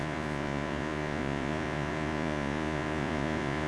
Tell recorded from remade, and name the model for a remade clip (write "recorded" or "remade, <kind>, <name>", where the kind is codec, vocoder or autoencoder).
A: remade, vocoder, Vocos